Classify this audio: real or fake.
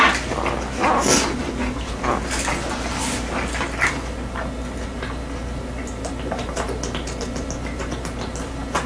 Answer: real